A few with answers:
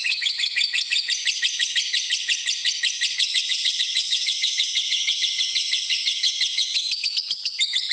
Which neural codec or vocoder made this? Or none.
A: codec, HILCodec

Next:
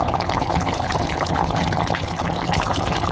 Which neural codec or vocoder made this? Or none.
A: codec, HILCodec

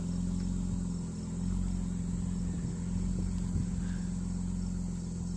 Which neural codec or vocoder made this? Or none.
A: none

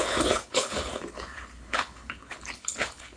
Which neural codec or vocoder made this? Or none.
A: codec, HILCodec